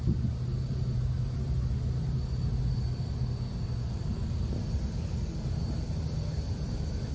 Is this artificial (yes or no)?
no